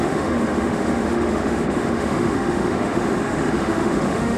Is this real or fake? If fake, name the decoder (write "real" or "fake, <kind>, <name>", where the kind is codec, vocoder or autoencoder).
fake, autoencoder, DAC-VAE